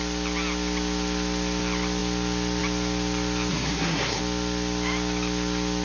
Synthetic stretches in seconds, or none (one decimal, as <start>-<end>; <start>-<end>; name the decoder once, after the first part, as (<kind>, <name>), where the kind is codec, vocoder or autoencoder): 3.5-4.2 (codec, SNAC)